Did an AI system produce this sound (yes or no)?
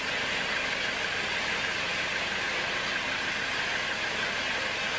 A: no